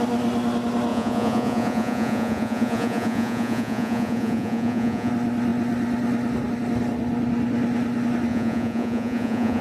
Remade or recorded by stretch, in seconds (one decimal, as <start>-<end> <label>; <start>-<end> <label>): 0.0-0.9 recorded; 0.9-5.1 remade; 5.1-8.3 recorded; 8.3-9.6 remade